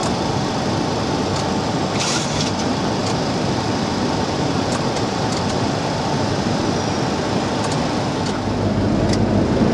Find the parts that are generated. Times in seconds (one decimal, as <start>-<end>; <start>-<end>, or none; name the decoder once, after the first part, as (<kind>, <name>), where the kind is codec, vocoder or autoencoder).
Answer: 0.0-0.5 (vocoder, BigVGAN v2); 3.0-6.6